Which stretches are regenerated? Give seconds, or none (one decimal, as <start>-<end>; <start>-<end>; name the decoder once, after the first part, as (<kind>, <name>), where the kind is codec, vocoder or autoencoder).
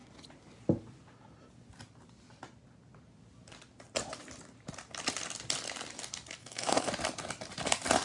6.4-6.9 (codec, SNAC)